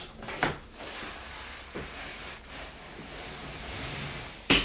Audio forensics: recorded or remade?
recorded